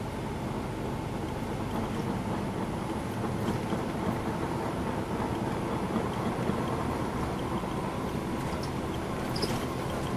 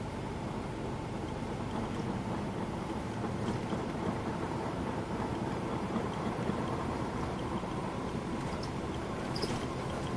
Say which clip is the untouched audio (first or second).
first